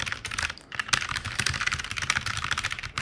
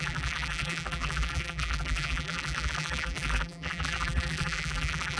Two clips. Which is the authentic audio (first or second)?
first